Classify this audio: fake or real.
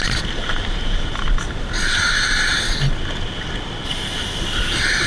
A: real